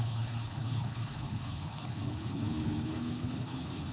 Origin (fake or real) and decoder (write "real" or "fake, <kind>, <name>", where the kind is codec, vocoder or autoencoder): fake, codec, HILCodec